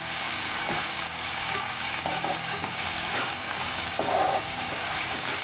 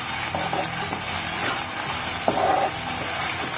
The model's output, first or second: first